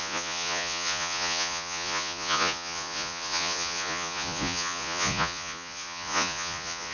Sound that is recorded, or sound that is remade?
remade